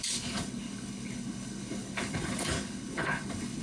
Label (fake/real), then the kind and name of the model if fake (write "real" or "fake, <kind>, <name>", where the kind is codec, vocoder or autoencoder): fake, codec, HILCodec